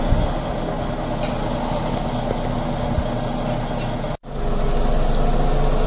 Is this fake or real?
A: real